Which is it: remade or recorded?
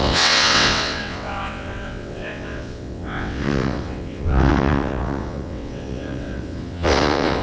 remade